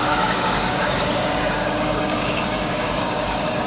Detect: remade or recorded remade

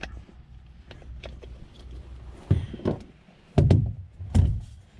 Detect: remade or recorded recorded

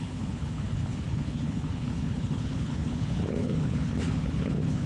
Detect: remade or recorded remade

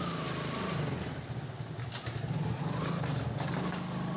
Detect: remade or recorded recorded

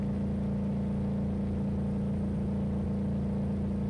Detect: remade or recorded recorded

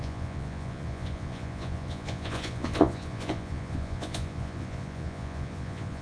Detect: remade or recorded remade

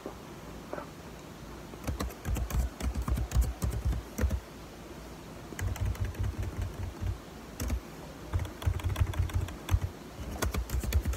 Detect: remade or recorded recorded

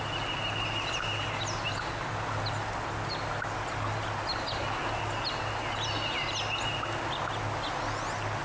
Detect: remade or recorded recorded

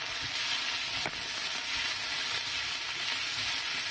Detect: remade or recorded recorded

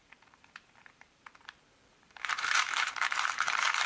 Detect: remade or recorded remade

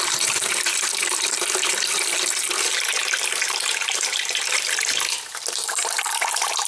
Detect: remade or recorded remade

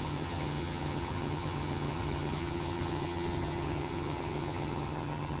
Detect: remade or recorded remade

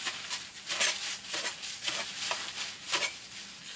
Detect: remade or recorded recorded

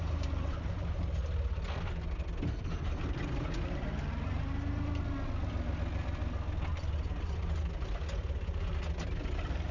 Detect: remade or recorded recorded